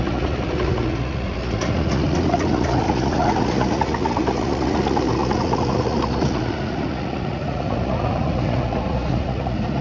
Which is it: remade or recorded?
remade